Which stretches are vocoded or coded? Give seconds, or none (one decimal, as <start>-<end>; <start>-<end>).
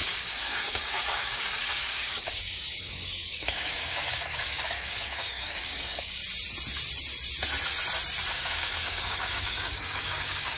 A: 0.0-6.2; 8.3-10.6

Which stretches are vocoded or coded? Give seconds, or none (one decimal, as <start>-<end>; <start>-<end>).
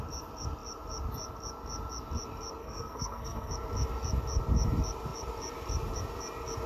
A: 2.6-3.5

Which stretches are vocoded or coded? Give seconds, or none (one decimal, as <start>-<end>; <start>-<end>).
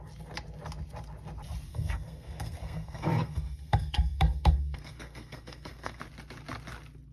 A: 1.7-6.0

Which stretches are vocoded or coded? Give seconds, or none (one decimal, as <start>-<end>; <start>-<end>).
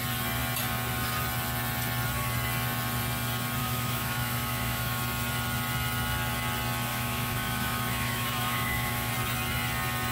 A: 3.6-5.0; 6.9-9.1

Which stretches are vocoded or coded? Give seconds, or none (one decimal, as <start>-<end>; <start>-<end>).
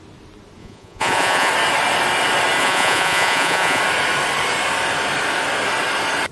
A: 0.6-1.5; 2.6-3.8